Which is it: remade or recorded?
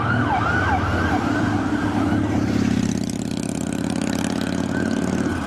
recorded